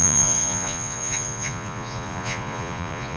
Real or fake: fake